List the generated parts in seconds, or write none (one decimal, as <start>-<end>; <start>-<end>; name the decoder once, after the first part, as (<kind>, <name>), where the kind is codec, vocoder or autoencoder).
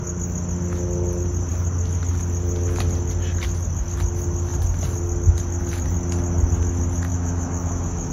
7.1-8.1 (autoencoder, DAC-VAE)